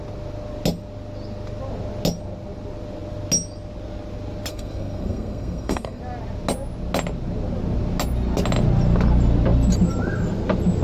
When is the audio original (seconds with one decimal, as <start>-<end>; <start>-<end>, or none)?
0.0-4.5; 6.0-10.8

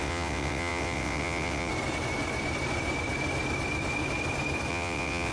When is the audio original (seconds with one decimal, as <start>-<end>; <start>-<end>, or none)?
1.7-4.7